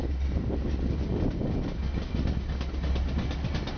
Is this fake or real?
real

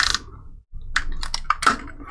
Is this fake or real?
real